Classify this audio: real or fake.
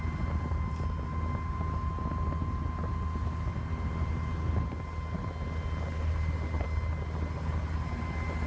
real